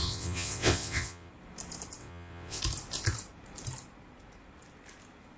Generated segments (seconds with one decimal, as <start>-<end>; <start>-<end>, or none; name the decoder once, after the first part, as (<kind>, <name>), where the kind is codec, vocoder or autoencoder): 0.0-1.3 (vocoder, WaveNeXt); 2.0-2.6